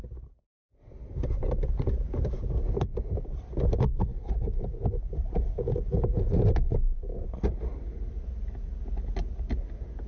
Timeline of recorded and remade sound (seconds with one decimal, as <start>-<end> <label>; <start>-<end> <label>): 0.0-1.1 recorded; 1.1-3.3 remade; 3.3-4.1 recorded; 4.1-5.9 remade; 5.9-10.1 recorded